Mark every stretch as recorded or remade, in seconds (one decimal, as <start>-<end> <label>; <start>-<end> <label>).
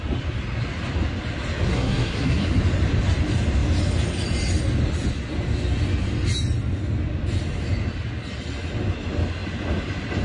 0.0-1.7 recorded; 1.7-2.6 remade; 2.6-10.2 recorded